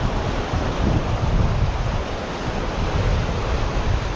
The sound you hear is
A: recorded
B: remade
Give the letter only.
A